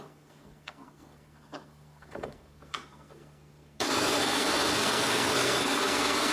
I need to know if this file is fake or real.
fake